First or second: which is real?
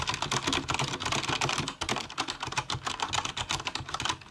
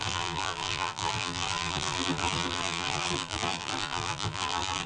first